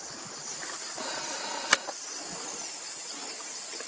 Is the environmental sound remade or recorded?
recorded